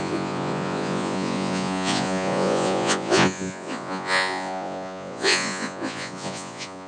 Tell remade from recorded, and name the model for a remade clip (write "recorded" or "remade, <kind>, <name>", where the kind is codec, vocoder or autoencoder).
remade, vocoder, Vocos